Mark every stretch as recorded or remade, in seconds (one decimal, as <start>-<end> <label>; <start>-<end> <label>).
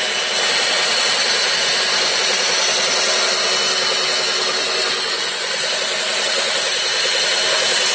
0.0-1.6 recorded; 1.6-2.2 remade; 2.2-4.6 recorded; 4.6-5.8 remade; 5.8-7.9 recorded